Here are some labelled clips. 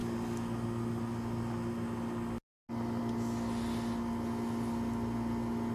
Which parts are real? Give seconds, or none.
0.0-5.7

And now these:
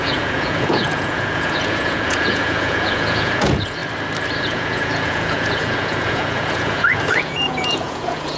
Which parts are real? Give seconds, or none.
3.8-4.4